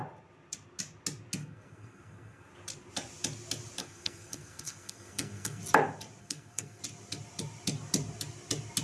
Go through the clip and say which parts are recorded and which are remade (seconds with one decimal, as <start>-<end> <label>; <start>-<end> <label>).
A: 0.0-1.4 recorded; 1.4-2.5 remade; 2.5-3.8 recorded; 3.8-5.6 remade; 5.6-6.2 recorded; 6.2-6.8 remade; 6.8-8.8 recorded